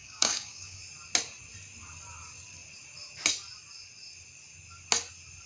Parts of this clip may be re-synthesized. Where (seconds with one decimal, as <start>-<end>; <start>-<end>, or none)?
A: 0.0-0.8